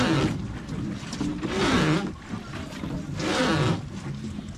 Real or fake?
real